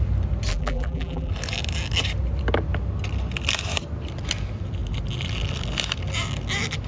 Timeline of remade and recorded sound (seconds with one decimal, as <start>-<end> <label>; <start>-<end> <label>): 0.0-0.5 recorded; 0.5-1.3 remade; 1.3-6.9 recorded